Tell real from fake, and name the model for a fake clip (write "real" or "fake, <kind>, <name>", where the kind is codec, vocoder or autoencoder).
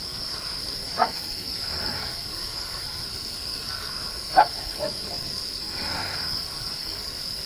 fake, codec, SNAC